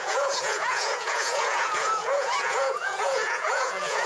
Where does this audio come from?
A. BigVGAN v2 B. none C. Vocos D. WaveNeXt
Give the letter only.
C